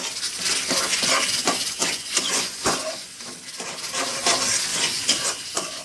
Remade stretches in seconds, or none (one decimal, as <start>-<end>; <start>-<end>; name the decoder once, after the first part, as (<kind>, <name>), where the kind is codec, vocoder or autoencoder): 0.9-3.2 (vocoder, Vocos); 4.7-5.8